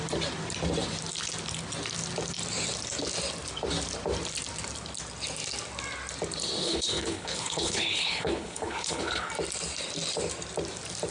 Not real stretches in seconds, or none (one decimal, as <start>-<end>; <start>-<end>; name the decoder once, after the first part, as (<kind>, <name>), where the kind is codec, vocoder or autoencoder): 6.6-9.3 (codec, HILCodec)